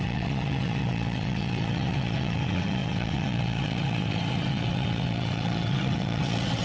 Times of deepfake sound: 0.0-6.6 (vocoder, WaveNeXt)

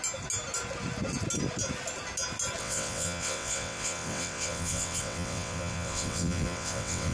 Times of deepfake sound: 2.6-7.1 (vocoder, WaveNeXt)

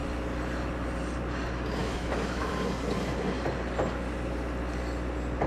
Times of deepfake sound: 1.8-2.5 (autoencoder, DAC-VAE)

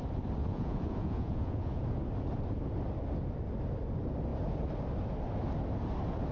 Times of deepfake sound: 0.4-1.8 (vocoder, Vocos)

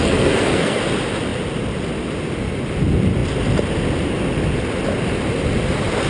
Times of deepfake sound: 0.0-0.8 (codec, SNAC)

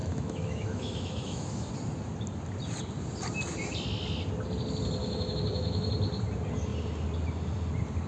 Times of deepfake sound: 0.0-1.7 (autoencoder, DAC-VAE); 5.0-5.9